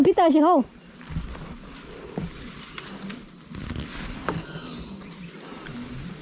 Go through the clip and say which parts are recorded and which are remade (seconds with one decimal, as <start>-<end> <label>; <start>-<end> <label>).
0.0-6.2 recorded